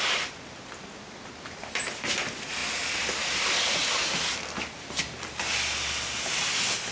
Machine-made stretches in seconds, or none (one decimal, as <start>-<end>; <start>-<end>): none